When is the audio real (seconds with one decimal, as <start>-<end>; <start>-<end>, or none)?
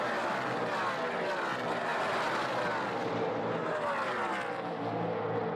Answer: 0.0-5.6